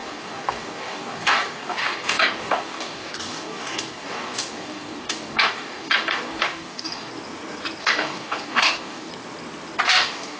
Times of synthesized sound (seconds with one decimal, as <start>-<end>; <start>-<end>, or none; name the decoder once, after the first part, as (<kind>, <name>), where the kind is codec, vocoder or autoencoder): 0.0-7.1 (codec, DAC); 7.8-9.1; 9.9-10.4